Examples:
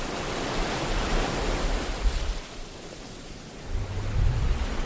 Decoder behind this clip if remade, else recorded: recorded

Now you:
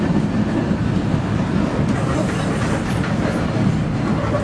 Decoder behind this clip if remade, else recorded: recorded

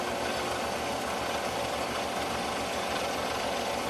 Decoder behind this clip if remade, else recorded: recorded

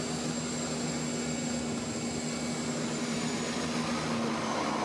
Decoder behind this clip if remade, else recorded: recorded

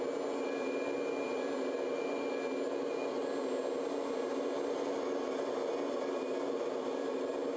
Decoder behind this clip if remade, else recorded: recorded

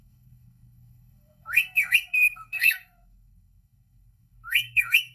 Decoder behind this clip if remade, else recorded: remade, codec, SNAC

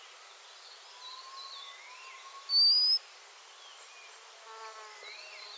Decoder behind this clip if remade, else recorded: recorded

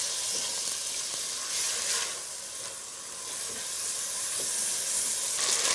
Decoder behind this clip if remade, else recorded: recorded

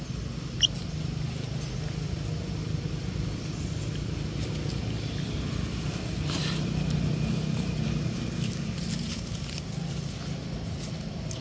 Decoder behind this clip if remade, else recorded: recorded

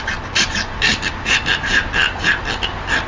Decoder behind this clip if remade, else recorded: recorded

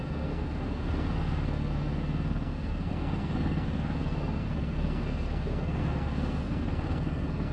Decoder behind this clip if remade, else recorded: remade, codec, SNAC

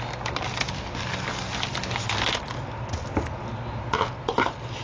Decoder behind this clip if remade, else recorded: recorded